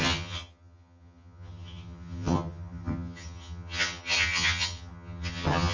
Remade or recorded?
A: remade